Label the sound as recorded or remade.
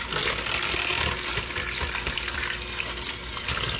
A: recorded